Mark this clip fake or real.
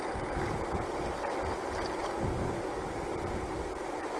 fake